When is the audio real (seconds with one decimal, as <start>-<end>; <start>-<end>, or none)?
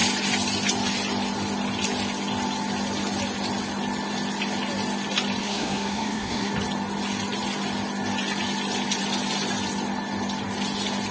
0.0-5.4; 6.5-11.1